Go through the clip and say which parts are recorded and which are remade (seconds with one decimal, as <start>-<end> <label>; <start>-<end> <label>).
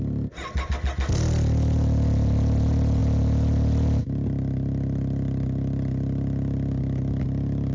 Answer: 0.0-7.7 recorded